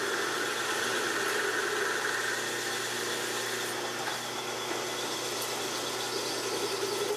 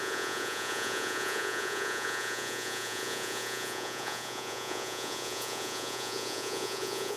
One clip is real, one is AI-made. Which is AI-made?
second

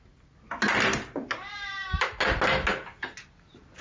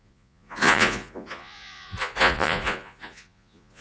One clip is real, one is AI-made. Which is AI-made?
second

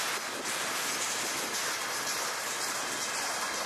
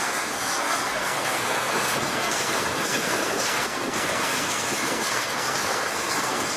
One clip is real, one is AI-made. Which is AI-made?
second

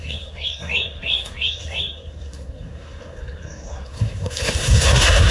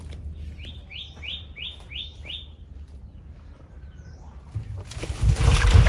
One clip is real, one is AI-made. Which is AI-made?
first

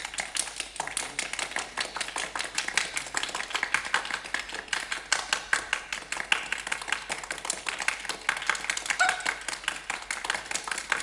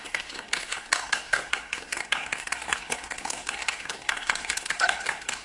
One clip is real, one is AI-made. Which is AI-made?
second